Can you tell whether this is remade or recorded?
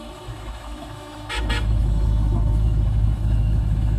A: remade